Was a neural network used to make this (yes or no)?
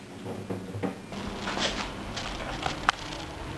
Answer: no